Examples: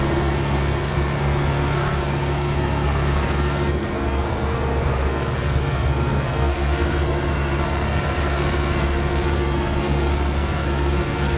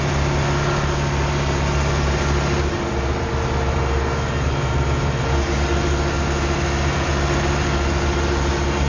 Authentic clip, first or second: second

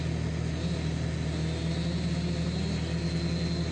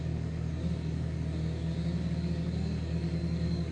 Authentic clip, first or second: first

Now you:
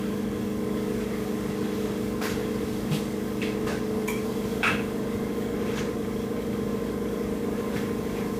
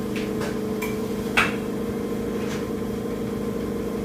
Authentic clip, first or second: second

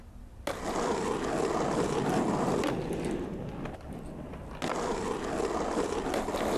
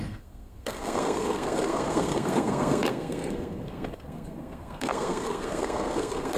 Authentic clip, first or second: first